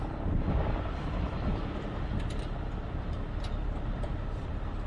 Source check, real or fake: fake